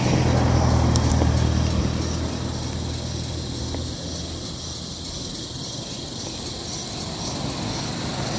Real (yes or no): yes